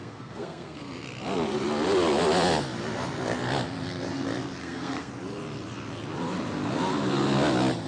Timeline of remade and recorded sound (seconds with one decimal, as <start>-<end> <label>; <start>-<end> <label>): 0.0-0.8 remade; 0.8-4.6 recorded; 4.6-5.1 remade; 5.1-7.9 recorded